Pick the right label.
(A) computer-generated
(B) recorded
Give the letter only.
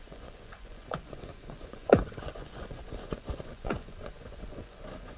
A